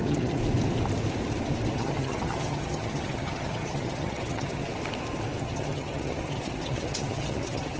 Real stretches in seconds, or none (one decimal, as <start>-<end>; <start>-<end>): 0.4-1.7; 4.6-5.4